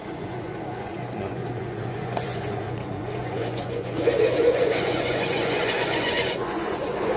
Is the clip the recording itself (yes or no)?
no